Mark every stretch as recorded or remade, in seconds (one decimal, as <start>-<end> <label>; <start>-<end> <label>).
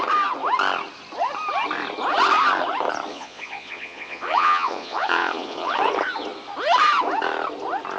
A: 0.0-3.1 recorded; 3.1-5.8 remade; 5.8-8.0 recorded